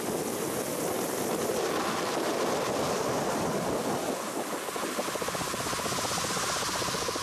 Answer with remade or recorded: recorded